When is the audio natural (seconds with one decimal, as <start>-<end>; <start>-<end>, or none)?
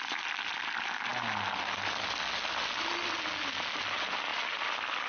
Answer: 0.0-5.1